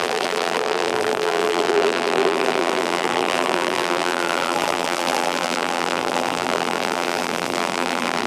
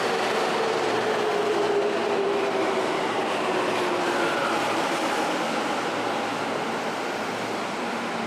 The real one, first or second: second